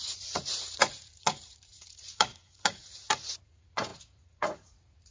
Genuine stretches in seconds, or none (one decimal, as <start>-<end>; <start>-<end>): none